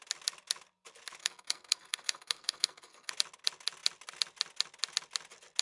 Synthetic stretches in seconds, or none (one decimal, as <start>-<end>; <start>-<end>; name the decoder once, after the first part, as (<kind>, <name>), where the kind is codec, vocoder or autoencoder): 1.2-3.1 (codec, SNAC)